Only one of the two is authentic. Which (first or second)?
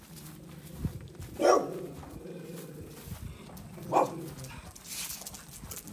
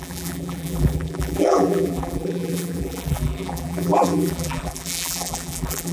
first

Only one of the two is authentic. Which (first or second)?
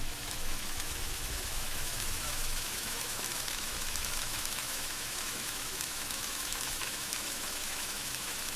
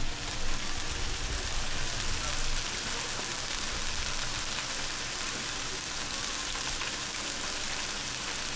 second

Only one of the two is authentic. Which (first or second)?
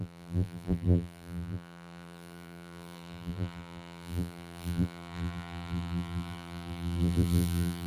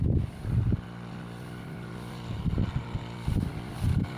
second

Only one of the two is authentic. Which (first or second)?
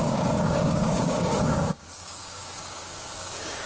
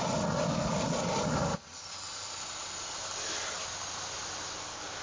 second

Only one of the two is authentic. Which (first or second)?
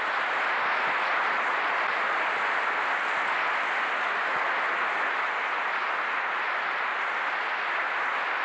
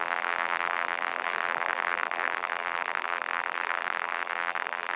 first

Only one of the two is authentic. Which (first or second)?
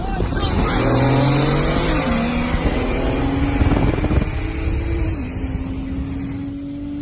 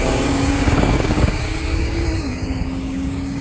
first